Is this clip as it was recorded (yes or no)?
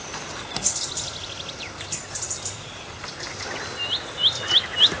yes